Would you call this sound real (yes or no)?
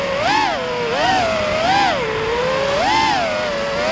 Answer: yes